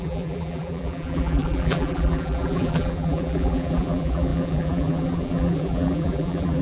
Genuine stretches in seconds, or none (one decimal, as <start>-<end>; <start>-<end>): none